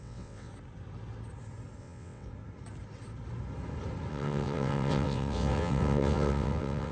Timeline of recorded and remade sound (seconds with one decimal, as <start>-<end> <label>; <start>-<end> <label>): 0.0-0.5 remade; 0.5-1.8 recorded; 1.8-2.3 remade; 2.3-4.1 recorded; 4.1-6.9 remade